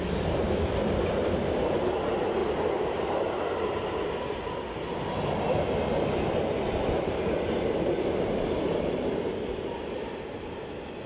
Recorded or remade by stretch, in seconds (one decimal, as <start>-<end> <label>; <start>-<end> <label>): 0.0-11.1 recorded